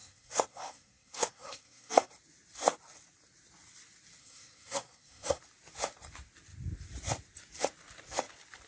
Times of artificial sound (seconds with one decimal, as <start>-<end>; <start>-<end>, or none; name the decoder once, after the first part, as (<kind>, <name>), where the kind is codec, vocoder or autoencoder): 0.0-2.1 (codec, SNAC); 4.2-5.4